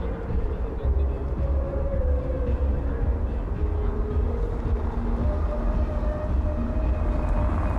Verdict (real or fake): real